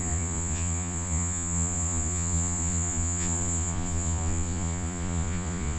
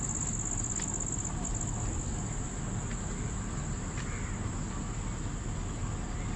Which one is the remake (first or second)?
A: first